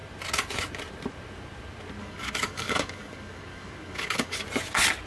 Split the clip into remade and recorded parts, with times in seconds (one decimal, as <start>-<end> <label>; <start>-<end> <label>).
0.0-2.0 recorded; 2.0-4.4 remade; 4.4-5.1 recorded